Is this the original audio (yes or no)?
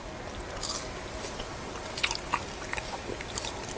yes